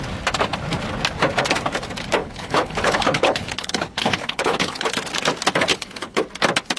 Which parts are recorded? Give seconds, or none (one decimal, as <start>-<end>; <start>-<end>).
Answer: 0.0-2.2; 5.0-5.7; 6.2-6.8